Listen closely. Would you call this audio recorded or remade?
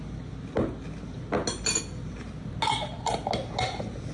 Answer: recorded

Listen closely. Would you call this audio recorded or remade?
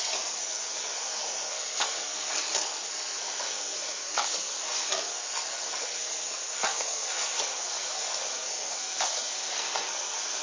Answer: remade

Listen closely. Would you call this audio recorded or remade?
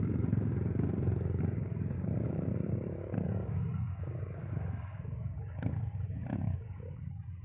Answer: remade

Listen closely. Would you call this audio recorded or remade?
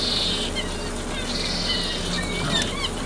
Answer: recorded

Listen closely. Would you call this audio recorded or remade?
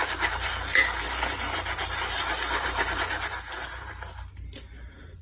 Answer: remade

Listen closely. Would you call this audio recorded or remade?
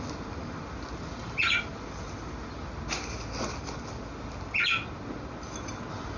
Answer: recorded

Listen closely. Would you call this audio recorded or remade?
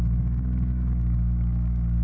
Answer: remade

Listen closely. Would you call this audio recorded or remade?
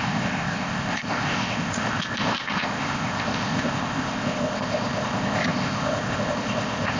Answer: remade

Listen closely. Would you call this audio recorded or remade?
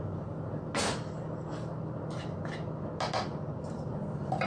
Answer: recorded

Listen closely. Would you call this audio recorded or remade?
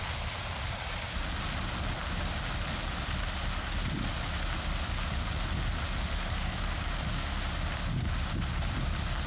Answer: recorded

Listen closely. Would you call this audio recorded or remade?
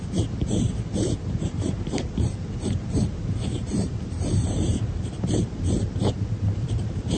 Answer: remade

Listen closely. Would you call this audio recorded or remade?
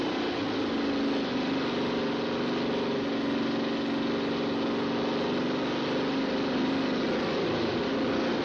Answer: recorded